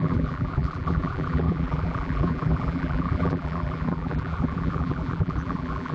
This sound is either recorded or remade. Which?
remade